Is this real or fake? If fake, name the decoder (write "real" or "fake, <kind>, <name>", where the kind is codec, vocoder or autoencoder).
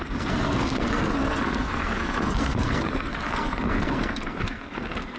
fake, codec, SNAC